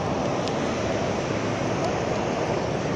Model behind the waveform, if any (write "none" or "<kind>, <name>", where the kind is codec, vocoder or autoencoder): none